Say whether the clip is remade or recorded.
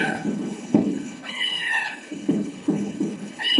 remade